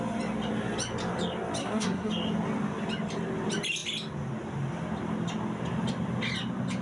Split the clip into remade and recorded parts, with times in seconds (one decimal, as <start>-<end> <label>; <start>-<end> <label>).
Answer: 0.0-1.6 recorded; 1.6-2.1 remade; 2.1-6.8 recorded